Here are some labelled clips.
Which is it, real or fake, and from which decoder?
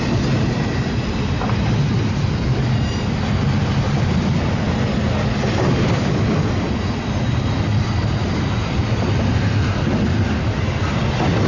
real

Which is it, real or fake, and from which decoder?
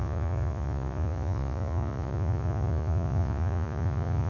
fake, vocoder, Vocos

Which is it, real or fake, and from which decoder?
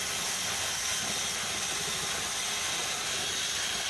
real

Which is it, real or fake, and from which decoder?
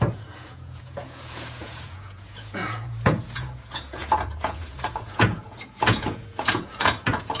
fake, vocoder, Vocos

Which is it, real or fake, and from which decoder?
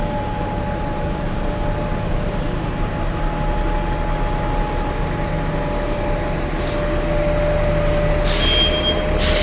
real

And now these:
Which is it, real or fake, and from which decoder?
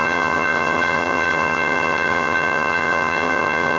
fake, vocoder, HiFi-GAN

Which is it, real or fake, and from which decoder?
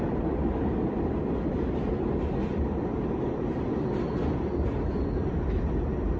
real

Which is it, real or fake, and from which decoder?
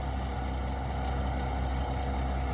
real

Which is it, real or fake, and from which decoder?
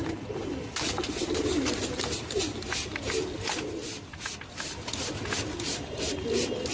real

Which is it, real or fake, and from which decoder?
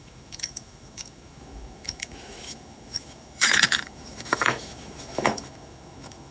fake, autoencoder, DAC-VAE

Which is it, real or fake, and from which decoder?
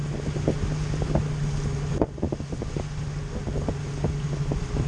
real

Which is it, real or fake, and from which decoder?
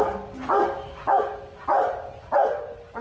real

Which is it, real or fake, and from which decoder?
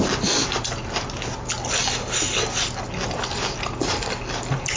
real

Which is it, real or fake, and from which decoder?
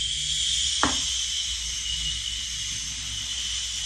real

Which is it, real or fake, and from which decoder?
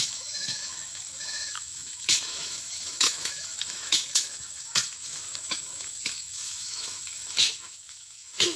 fake, autoencoder, DAC-VAE